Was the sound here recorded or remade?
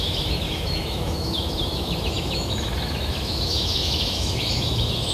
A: remade